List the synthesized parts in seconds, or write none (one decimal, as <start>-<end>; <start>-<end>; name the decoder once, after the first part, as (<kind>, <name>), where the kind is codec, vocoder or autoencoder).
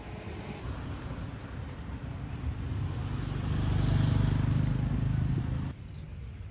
none